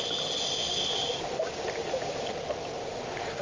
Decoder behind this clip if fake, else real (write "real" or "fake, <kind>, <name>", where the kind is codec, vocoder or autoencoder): real